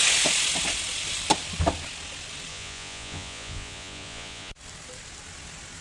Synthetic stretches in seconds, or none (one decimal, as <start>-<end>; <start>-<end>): 2.5-4.5